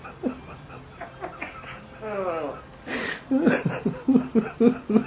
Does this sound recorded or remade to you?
recorded